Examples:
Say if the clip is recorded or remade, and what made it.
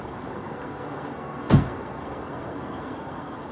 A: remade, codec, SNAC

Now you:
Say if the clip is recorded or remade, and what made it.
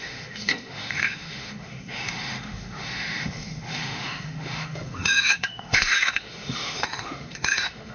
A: remade, autoencoder, DAC-VAE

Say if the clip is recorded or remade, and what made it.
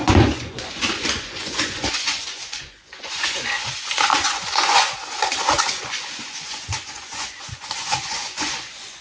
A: remade, vocoder, Vocos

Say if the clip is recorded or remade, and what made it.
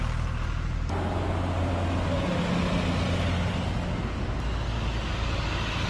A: recorded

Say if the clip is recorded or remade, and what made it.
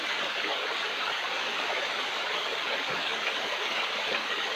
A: remade, codec, DAC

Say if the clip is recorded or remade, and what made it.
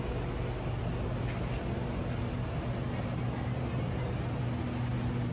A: recorded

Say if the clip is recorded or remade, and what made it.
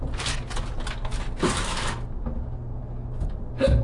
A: recorded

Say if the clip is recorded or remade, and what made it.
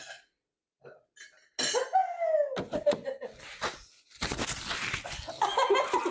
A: recorded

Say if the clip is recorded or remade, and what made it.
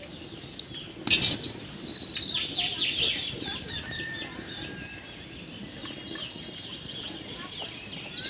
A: recorded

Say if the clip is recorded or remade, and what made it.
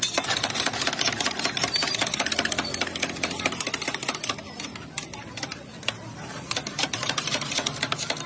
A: recorded